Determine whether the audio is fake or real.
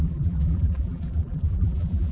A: fake